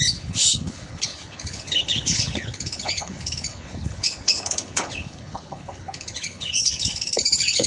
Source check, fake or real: fake